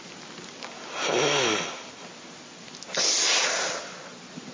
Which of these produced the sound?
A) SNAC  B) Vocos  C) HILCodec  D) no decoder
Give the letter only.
D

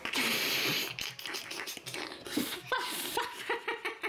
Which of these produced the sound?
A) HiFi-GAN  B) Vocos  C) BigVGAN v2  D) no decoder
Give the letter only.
D